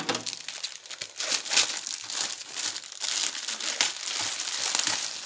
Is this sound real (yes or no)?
yes